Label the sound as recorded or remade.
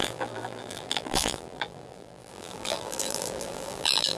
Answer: remade